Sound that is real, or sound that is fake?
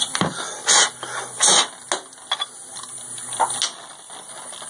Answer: real